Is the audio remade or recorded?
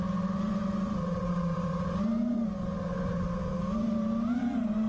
remade